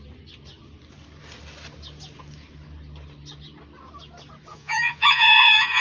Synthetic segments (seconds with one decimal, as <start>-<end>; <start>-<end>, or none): 4.5-5.8